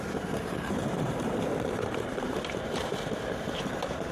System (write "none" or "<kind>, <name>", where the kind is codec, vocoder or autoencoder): vocoder, BigVGAN v2